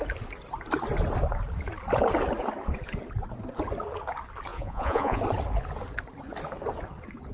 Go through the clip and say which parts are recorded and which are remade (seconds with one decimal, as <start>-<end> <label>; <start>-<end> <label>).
0.0-4.5 recorded; 4.5-5.2 remade; 5.2-7.3 recorded